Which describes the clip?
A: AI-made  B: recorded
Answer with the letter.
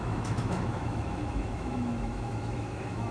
A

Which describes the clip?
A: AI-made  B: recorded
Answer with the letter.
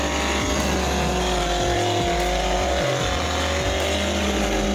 B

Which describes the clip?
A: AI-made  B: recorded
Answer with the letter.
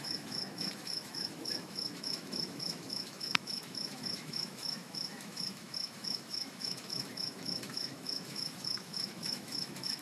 A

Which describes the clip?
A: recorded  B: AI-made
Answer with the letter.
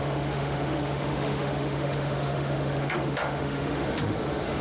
B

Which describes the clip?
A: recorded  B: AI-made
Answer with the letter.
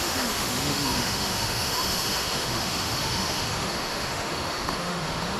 B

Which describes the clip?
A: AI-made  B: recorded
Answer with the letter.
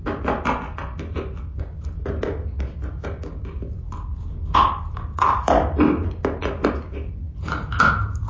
B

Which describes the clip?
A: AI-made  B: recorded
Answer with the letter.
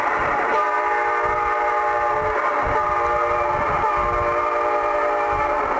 B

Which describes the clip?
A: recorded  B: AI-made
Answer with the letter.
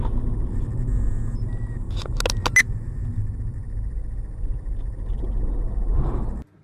A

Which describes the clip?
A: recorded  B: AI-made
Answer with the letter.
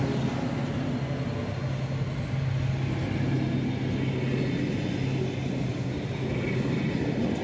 A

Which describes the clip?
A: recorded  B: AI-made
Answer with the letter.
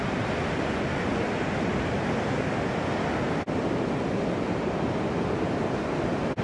A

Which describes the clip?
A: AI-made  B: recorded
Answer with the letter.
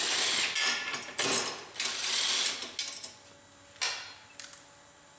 B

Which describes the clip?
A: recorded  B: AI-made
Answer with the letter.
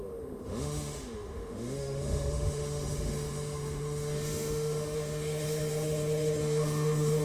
B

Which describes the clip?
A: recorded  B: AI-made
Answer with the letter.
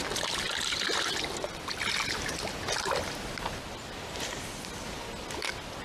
A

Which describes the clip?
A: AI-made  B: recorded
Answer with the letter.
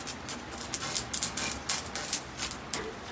B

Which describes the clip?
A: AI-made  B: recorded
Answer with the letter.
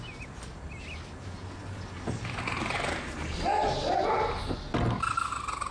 B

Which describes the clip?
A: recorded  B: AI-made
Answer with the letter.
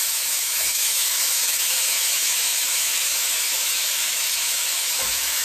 B